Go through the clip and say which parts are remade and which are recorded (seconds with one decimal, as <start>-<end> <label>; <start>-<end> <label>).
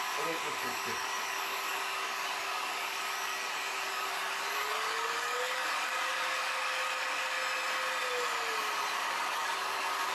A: 0.0-7.4 remade; 7.4-9.0 recorded; 9.0-10.1 remade